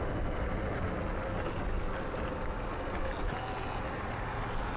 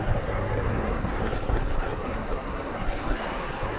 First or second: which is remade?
second